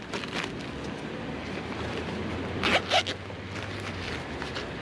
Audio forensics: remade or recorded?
recorded